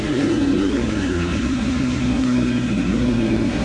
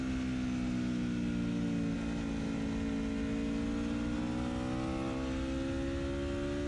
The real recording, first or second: second